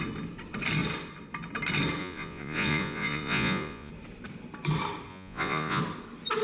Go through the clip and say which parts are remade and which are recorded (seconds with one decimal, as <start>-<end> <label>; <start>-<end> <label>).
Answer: 0.0-2.0 recorded; 2.0-3.9 remade; 3.9-5.1 recorded; 5.1-5.8 remade; 5.8-6.4 recorded